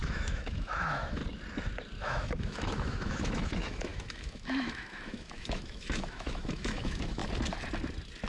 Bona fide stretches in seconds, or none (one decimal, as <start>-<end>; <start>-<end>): 1.2-2.0; 7.2-8.3